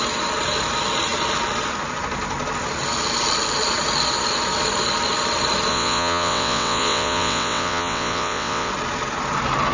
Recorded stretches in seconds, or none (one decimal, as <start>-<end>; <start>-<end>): 0.0-5.7; 8.7-9.7